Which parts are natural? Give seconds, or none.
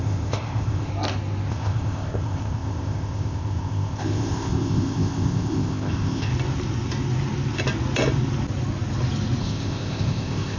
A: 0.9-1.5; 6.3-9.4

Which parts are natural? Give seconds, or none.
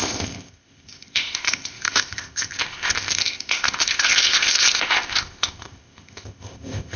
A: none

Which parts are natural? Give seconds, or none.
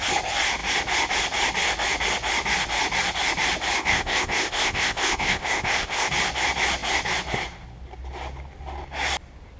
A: 0.0-3.8; 6.1-9.6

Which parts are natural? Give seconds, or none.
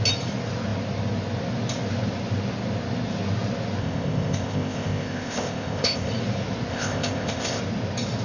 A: 0.0-3.8; 6.1-6.7; 7.6-8.2